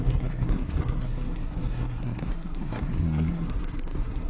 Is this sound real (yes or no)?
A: no